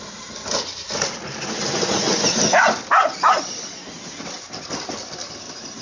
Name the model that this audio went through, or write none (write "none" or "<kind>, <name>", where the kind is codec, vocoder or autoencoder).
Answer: none